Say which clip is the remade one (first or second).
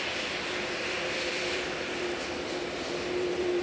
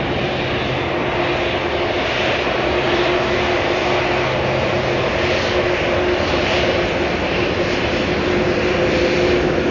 first